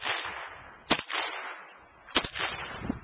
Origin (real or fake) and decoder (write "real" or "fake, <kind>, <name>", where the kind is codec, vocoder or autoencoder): real